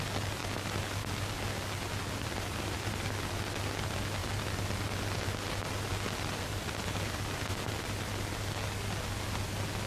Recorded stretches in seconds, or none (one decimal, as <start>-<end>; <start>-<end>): 0.0-9.9